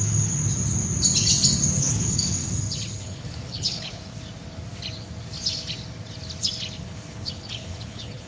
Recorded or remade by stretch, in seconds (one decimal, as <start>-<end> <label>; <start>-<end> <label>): 0.0-0.4 remade; 0.4-1.8 recorded; 1.8-2.4 remade; 2.4-3.0 recorded; 3.0-4.0 remade; 4.0-6.8 recorded; 6.8-8.3 remade